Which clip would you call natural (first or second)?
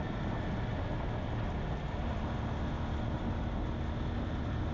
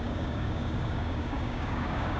first